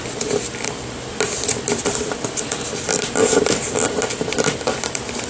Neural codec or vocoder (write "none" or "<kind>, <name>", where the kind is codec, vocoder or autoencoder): none